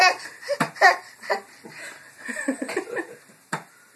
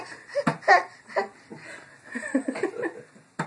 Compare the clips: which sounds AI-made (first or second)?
first